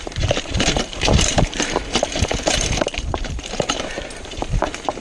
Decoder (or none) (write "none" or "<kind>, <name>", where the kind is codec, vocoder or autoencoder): vocoder, BigVGAN v2